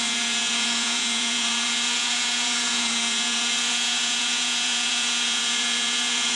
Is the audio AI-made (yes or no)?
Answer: yes